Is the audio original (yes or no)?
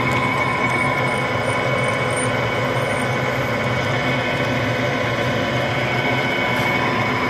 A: yes